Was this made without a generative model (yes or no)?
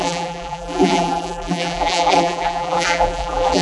no